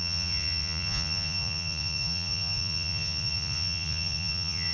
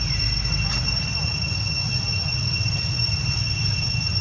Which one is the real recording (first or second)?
second